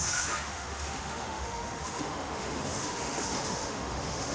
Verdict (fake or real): fake